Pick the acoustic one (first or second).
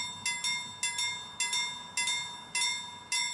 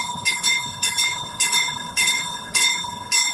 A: first